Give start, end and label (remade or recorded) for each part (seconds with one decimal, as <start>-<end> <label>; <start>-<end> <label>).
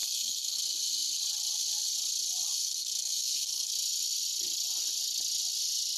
0.0-0.6 remade; 0.6-2.5 recorded; 2.5-3.7 remade; 3.7-6.0 recorded